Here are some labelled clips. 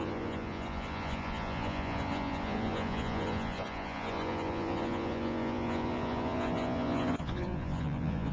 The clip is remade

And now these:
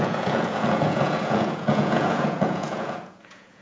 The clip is remade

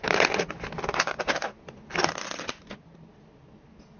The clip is recorded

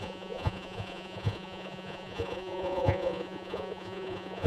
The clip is remade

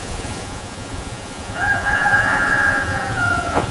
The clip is remade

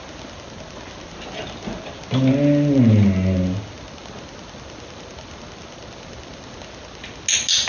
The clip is recorded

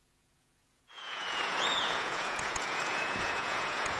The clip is remade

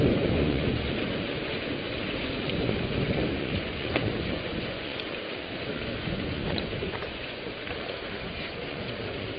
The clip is remade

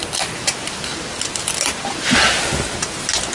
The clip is recorded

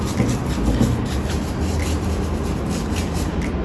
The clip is recorded